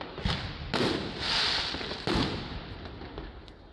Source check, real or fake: real